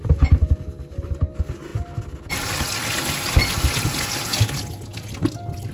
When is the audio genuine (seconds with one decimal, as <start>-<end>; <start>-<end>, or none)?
0.0-5.7